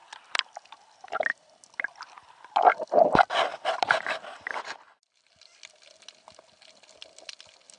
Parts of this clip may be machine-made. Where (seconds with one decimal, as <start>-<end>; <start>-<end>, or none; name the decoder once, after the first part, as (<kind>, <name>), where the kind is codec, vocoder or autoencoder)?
3.5-5.8 (vocoder, BigVGAN v2)